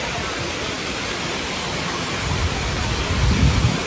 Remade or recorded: recorded